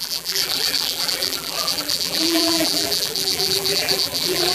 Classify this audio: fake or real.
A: fake